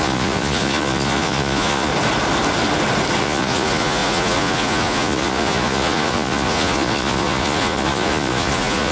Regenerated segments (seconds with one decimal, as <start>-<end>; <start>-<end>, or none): 0.0-1.9; 3.2-8.9